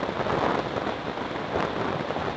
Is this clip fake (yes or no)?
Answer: no